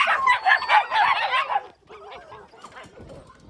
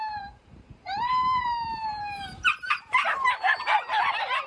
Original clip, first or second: first